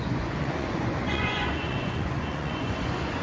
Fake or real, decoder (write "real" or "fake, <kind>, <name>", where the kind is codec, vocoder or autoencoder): fake, vocoder, Vocos